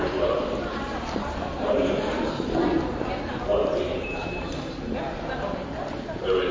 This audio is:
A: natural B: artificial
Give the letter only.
B